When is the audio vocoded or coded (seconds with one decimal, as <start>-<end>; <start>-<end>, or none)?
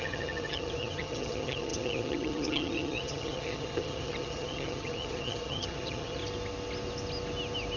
0.0-6.2